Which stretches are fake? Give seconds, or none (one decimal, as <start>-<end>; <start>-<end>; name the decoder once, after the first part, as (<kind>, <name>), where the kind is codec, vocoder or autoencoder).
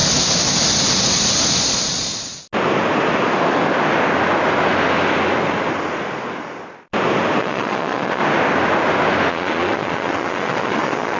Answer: 1.7-2.1 (vocoder, Vocos); 7.4-8.2; 9.3-11.2